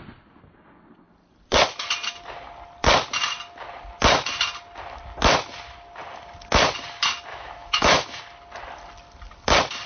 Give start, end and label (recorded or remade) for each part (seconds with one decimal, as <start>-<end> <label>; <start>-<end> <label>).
0.0-7.3 recorded; 7.3-8.2 remade; 8.2-9.9 recorded